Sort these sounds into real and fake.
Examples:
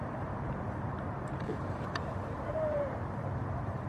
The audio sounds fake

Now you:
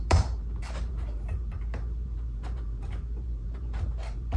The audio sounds fake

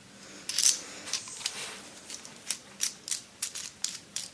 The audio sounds fake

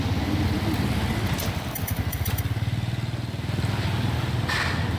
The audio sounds real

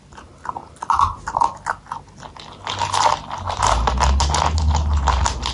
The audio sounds real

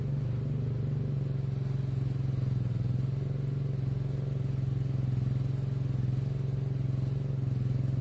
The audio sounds real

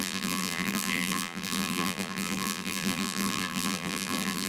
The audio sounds fake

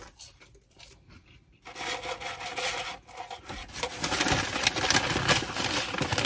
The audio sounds real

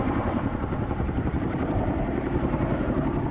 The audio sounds fake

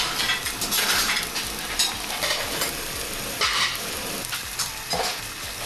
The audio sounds fake